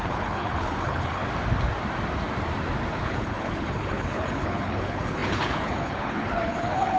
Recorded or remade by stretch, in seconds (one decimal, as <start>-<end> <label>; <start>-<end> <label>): 0.0-1.2 remade; 1.2-2.9 recorded; 2.9-7.0 remade